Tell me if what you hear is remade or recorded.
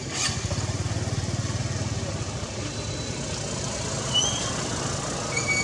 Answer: recorded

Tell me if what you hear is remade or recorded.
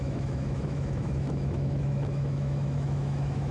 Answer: remade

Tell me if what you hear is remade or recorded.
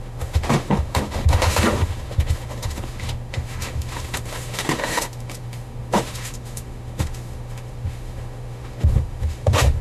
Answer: remade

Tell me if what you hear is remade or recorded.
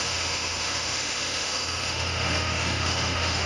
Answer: remade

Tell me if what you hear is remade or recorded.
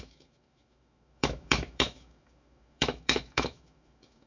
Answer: remade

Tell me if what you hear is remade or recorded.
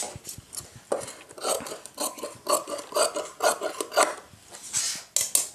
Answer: recorded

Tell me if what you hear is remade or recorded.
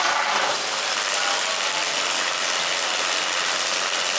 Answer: recorded